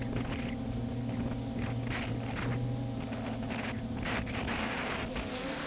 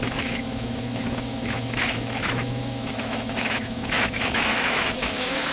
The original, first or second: first